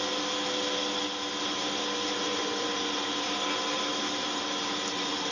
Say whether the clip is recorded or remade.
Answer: recorded